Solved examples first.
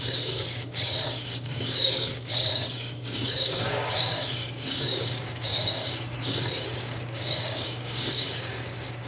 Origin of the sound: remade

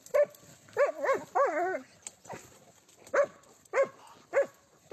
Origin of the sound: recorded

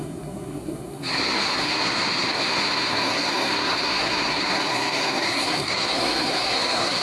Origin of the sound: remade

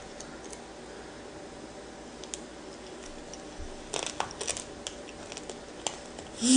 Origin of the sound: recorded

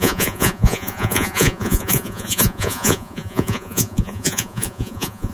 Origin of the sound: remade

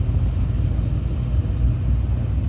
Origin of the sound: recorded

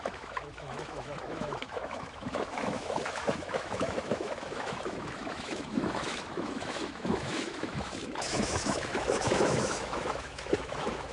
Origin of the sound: remade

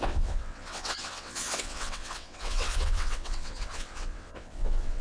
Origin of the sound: remade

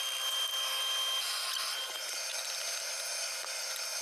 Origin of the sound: recorded